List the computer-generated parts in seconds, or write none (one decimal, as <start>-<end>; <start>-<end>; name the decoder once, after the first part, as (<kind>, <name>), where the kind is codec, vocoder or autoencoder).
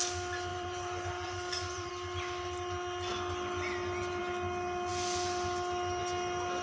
0.5-1.9 (vocoder, BigVGAN v2)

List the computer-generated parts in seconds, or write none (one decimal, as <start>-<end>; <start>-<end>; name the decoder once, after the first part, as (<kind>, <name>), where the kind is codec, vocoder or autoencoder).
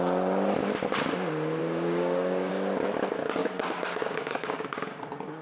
1.6-2.5 (codec, DAC); 3.4-5.4